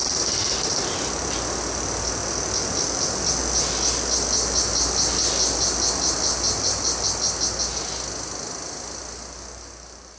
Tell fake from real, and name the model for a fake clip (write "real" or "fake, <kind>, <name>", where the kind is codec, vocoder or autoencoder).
real